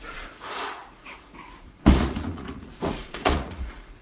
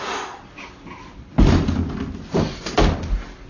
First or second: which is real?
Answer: second